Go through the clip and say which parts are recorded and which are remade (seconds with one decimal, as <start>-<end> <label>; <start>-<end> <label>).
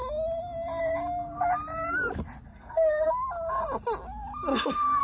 0.0-2.5 recorded; 2.5-3.1 remade; 3.1-4.5 recorded; 4.5-5.0 remade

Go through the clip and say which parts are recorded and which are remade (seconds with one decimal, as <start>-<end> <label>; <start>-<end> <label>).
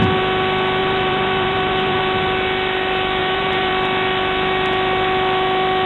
0.0-0.8 recorded; 0.8-2.0 remade; 2.0-3.2 recorded; 3.2-3.7 remade; 3.7-5.9 recorded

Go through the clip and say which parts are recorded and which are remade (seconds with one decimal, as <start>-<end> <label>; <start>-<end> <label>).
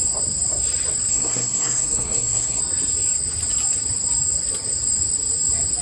0.0-1.1 recorded; 1.1-2.6 remade; 2.6-5.8 recorded